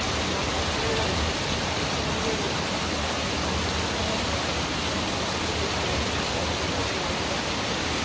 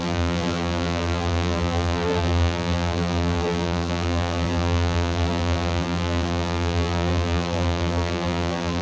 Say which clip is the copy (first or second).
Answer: second